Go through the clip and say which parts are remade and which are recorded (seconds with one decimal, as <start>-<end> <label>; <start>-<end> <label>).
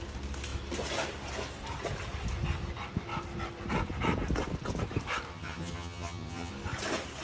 0.0-5.3 recorded; 5.3-6.5 remade; 6.5-7.2 recorded